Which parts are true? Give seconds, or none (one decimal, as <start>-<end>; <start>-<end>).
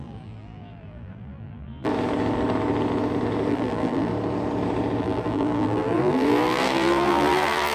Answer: 1.9-3.5; 4.1-5.0